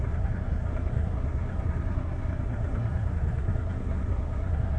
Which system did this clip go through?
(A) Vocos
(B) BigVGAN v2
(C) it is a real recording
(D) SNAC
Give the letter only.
D